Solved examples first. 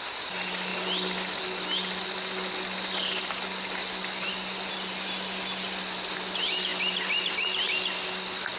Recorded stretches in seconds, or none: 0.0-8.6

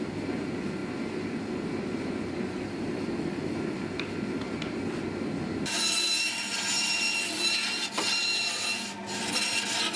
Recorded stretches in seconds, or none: 0.0-10.0

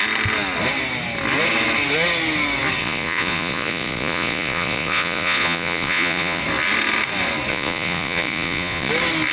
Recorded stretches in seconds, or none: 0.0-2.8; 6.4-7.5; 8.9-9.3

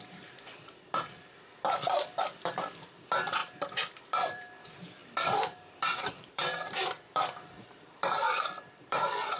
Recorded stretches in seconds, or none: 3.4-4.0

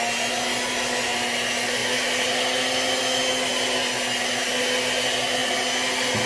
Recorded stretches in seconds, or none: 0.0-6.3

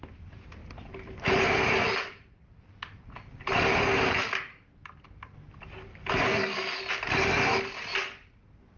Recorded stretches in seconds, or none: 0.0-5.9; 6.8-8.8

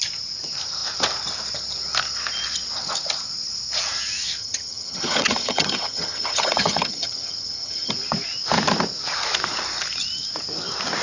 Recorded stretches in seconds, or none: 0.0-4.4; 7.9-11.0

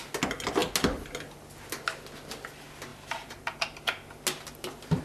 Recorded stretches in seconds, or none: 0.0-2.9; 3.6-5.0